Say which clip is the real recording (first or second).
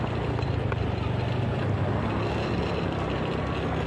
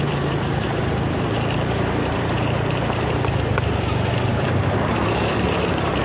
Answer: first